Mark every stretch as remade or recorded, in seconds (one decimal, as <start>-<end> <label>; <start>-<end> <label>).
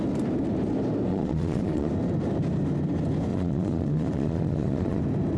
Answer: 0.0-1.1 recorded; 1.1-1.9 remade; 1.9-3.3 recorded; 3.3-5.0 remade; 5.0-5.4 recorded